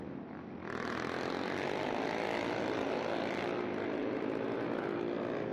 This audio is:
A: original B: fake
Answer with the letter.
A